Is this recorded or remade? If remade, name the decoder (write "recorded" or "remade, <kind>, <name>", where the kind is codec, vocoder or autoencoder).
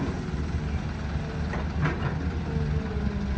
recorded